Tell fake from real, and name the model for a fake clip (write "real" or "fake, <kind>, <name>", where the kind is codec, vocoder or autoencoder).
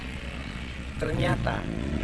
fake, vocoder, Vocos